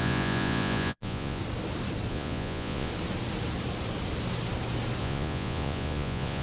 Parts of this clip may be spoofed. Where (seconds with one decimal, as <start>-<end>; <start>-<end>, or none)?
0.0-1.4; 2.1-2.9; 5.0-6.4